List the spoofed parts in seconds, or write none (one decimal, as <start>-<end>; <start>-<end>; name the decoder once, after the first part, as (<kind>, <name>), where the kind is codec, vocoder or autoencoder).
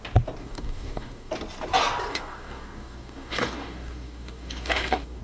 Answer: 0.4-1.3 (codec, DAC); 2.1-5.2